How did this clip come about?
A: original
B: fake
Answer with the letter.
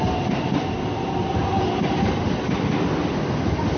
A